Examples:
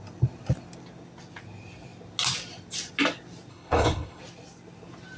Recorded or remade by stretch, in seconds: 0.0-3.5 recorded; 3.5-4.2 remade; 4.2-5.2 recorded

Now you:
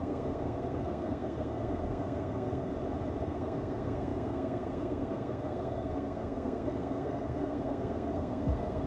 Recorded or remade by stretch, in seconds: 0.0-2.7 remade; 2.7-3.2 recorded; 3.2-8.9 remade

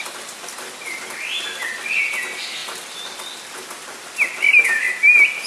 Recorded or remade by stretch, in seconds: 0.0-2.0 remade; 2.0-5.5 recorded

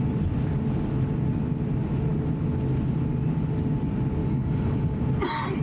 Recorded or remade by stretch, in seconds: 0.0-4.2 recorded; 4.2-5.0 remade; 5.0-5.6 recorded